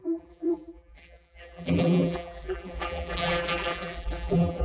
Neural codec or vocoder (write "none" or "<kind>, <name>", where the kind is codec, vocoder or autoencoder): vocoder, BigVGAN v2